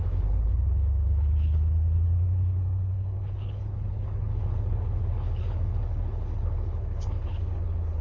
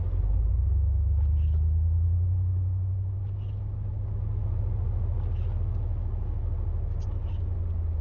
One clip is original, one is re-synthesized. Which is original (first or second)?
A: second